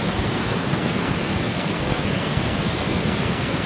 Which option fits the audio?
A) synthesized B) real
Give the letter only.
A